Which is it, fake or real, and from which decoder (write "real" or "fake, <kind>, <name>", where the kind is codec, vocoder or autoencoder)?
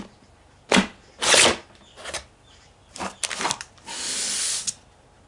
real